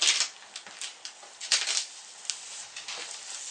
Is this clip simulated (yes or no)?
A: no